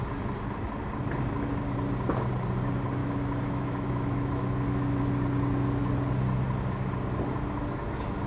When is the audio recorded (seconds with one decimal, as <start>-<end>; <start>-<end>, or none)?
0.0-3.0; 5.0-8.3

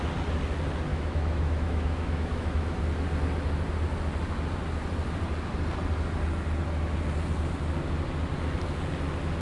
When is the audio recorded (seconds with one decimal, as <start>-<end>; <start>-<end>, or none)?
0.0-0.9; 2.8-9.4

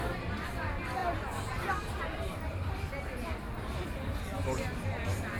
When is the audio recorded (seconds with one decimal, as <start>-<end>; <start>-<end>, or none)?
0.0-5.4